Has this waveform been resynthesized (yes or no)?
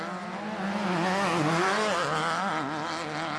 no